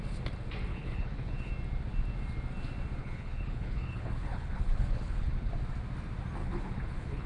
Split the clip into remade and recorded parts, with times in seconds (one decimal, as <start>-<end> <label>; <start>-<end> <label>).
0.0-0.7 recorded; 0.7-1.5 remade; 1.5-3.0 recorded; 3.0-5.5 remade; 5.5-6.4 recorded; 6.4-7.3 remade